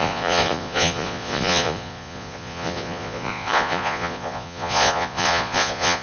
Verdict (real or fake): fake